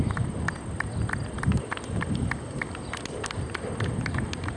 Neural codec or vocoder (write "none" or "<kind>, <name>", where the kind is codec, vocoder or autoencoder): none